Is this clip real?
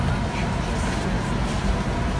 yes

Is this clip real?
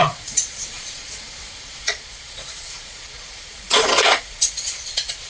no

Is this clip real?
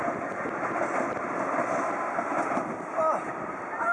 yes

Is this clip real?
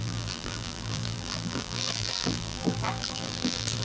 no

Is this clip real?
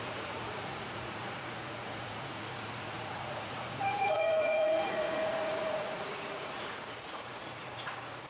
no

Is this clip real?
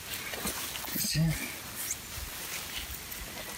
yes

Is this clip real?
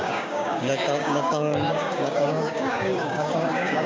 no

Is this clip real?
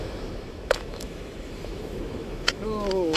no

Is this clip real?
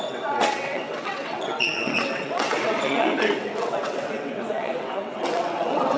no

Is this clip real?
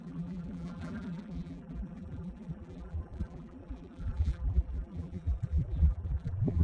no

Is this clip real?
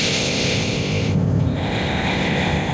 no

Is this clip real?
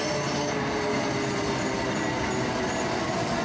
yes